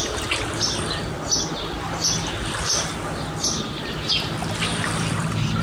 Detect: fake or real real